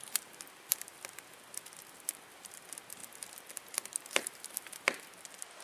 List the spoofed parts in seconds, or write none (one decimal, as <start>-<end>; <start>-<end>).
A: none